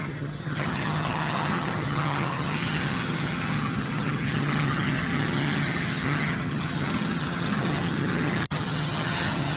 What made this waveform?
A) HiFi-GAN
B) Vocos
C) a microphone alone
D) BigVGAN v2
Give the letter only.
A